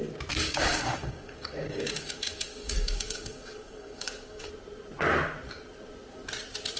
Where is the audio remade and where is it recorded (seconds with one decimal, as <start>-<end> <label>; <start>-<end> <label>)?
0.0-0.4 recorded; 0.4-4.5 remade; 4.5-6.8 recorded